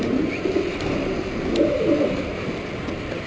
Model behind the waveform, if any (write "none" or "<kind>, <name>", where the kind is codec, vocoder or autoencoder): vocoder, BigVGAN v2